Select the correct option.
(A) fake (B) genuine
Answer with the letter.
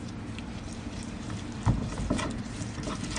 B